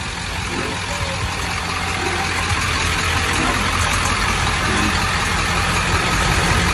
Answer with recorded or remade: recorded